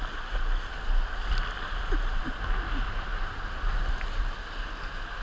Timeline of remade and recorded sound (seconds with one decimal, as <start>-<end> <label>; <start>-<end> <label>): 0.0-5.2 recorded